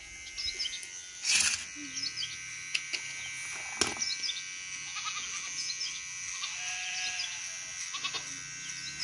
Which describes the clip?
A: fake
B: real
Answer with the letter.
B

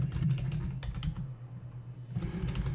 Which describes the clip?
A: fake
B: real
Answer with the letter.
B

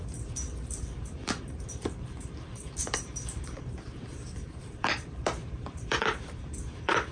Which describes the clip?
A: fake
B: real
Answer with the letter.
A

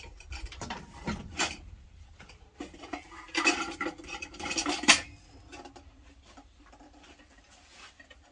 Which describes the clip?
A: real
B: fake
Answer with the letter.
B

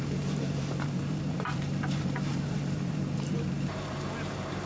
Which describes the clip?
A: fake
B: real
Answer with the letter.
A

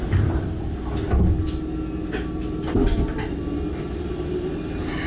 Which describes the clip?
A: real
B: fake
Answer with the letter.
A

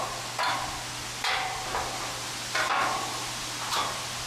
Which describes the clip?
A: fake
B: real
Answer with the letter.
B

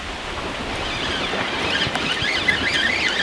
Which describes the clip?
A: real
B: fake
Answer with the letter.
A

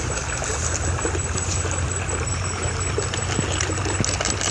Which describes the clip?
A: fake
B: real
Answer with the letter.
B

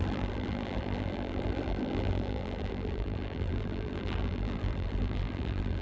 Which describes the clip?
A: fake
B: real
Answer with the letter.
A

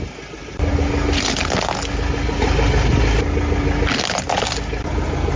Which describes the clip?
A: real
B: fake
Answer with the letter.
A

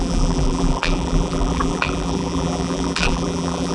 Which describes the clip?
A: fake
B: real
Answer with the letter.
A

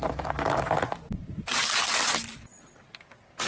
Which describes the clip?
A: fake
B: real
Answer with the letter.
B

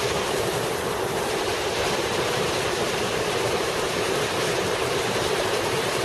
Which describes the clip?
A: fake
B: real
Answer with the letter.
A